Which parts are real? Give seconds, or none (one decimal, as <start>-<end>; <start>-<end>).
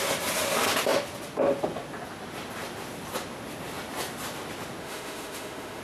0.0-4.8